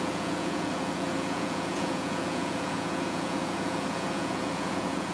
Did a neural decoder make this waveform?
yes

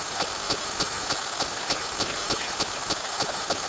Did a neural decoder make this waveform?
no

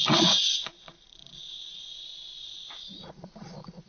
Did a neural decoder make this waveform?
yes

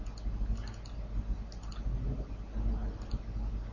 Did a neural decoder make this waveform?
no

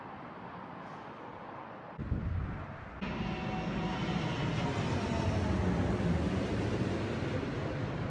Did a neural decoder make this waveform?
no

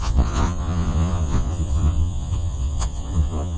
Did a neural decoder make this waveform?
yes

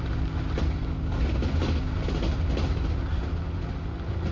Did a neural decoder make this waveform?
no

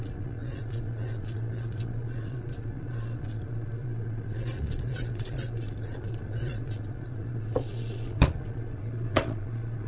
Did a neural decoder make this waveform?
yes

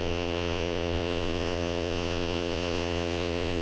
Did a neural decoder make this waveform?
yes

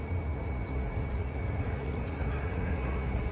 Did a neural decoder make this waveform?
yes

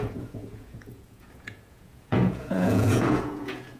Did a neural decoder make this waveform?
yes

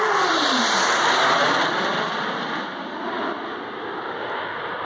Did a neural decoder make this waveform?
no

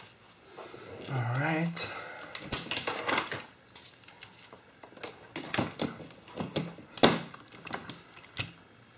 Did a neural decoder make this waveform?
no